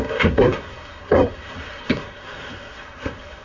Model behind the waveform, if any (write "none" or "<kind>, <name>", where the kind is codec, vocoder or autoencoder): codec, SNAC